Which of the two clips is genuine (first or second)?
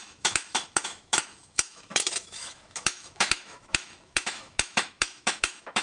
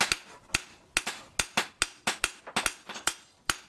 second